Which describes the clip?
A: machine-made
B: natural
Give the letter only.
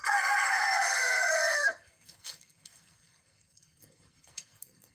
A